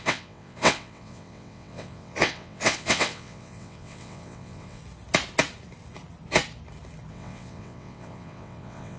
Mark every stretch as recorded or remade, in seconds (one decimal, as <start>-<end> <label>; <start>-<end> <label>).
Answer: 0.0-4.8 remade; 4.8-7.1 recorded; 7.1-9.0 remade

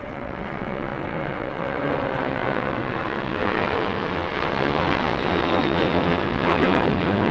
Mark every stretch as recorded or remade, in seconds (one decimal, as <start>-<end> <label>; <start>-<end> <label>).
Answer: 0.0-7.3 remade

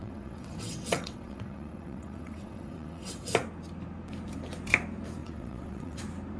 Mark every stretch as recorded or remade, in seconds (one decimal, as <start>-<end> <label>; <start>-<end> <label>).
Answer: 0.0-3.3 remade; 3.3-5.2 recorded; 5.2-6.0 remade; 6.0-6.4 recorded